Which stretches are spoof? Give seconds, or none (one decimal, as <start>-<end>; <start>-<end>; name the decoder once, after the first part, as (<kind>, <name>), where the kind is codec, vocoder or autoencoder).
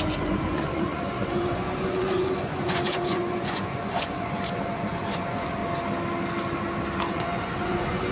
0.0-5.6 (vocoder, Vocos); 7.1-8.1